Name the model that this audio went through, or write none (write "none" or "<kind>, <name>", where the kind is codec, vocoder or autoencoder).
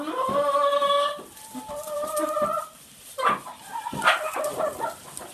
none